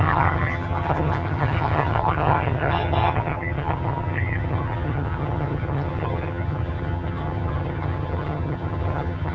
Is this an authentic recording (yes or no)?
no